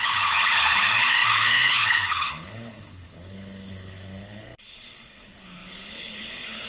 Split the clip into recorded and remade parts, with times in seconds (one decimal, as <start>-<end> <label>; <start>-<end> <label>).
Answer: 0.0-6.7 remade